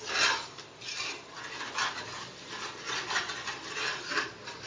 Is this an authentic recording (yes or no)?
yes